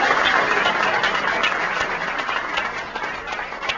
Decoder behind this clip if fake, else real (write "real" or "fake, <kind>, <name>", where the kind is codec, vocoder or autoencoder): real